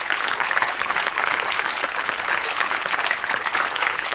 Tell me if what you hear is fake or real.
fake